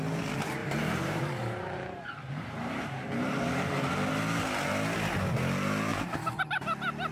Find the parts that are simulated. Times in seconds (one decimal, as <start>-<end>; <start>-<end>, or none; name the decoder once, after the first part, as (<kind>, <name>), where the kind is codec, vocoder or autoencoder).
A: 0.6-4.1 (vocoder, BigVGAN v2); 5.9-6.4